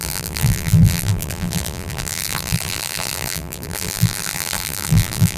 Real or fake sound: fake